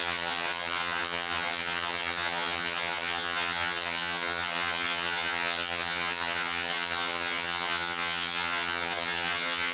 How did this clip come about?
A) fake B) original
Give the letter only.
A